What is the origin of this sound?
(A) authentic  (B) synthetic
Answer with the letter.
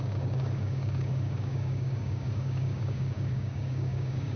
B